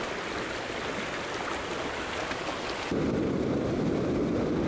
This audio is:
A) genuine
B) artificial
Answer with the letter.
A